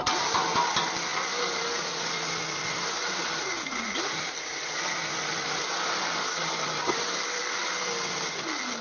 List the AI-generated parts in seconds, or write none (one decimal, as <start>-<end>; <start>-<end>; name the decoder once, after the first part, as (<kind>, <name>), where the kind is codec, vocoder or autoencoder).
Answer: none